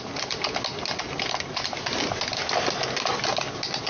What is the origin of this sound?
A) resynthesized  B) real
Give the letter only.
B